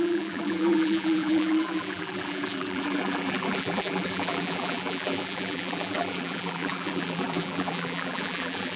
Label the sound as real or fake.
fake